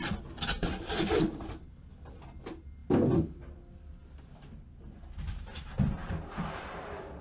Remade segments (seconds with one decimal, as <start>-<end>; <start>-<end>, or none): 0.6-1.5; 6.0-7.2